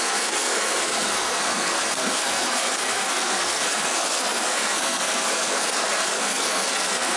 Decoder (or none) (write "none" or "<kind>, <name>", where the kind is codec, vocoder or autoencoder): codec, SNAC